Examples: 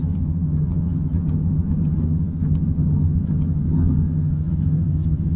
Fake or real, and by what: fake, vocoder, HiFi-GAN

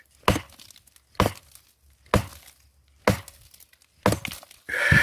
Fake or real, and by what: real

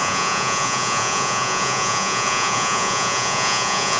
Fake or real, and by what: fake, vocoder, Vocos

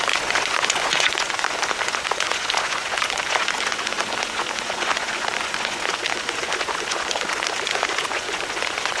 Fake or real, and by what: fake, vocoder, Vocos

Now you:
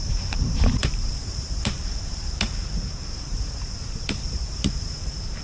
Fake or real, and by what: fake, vocoder, BigVGAN v2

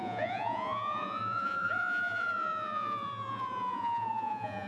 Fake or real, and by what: fake, vocoder, Vocos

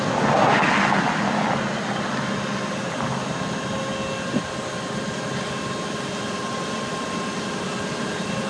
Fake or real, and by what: real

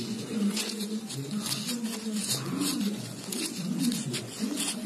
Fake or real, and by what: fake, vocoder, Vocos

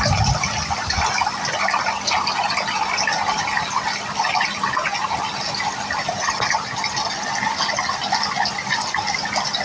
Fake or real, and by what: real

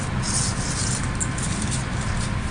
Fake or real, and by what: real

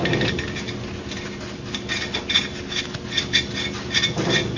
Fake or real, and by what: real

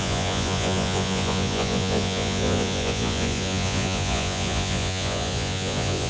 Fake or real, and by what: fake, vocoder, Vocos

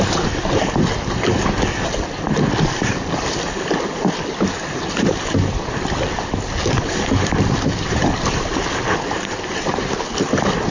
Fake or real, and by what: real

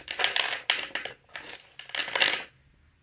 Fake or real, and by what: real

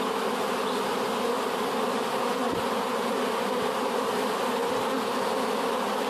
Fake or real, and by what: real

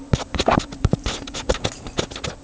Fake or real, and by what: real